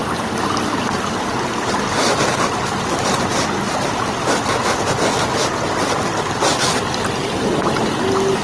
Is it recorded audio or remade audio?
recorded